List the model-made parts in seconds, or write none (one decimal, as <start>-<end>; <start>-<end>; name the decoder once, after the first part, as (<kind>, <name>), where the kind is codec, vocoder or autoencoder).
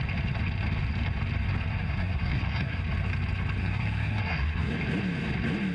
1.7-2.8 (codec, SNAC); 3.6-4.7